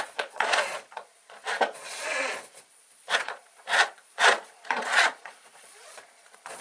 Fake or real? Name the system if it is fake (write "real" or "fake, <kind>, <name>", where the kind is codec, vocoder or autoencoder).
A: fake, vocoder, Vocos